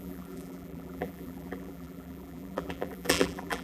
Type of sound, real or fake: fake